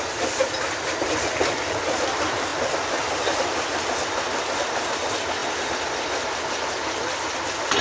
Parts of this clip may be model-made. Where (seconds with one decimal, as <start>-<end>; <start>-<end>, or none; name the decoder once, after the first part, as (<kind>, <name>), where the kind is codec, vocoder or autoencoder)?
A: none